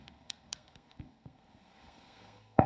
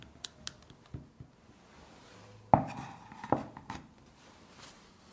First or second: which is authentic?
second